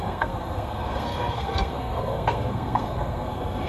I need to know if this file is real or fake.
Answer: fake